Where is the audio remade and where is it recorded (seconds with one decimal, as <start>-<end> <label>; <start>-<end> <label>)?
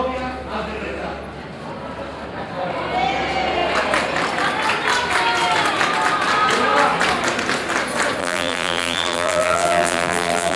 0.0-8.2 recorded; 8.2-10.6 remade